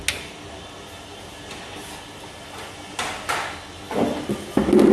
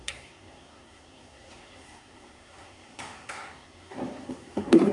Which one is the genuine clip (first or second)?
first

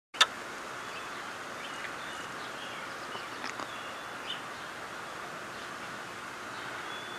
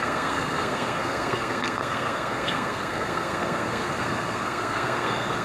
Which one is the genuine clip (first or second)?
first